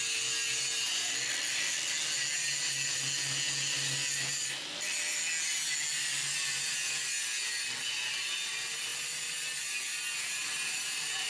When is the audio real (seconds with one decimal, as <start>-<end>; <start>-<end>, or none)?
0.0-11.3